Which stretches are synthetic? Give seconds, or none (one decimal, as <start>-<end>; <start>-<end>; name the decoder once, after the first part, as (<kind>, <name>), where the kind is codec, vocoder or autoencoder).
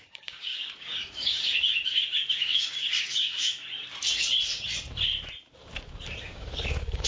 0.0-3.6 (codec, DAC); 6.2-7.1